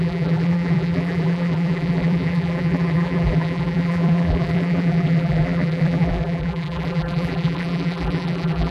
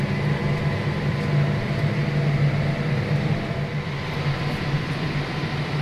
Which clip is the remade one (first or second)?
first